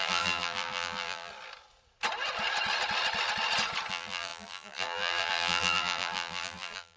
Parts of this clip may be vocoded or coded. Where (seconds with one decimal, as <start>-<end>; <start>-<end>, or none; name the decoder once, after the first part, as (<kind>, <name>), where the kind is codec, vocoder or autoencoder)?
0.0-1.3 (vocoder, BigVGAN v2); 3.9-7.0